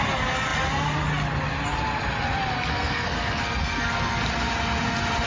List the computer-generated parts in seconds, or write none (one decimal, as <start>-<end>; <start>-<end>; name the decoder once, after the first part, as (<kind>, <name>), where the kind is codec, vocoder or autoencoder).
2.7-4.2 (codec, SNAC)